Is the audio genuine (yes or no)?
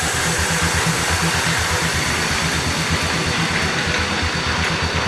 yes